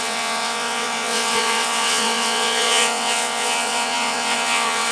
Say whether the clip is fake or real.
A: fake